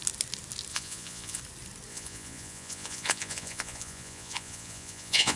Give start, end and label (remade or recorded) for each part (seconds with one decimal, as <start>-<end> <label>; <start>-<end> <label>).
0.0-0.7 recorded; 0.7-1.4 remade; 1.4-1.9 recorded; 1.9-5.4 remade